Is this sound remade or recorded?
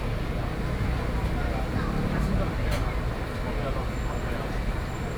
recorded